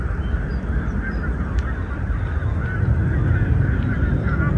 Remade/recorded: recorded